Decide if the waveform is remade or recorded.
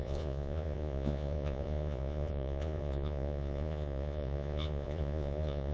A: remade